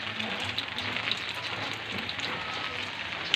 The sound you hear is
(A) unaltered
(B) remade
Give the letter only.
A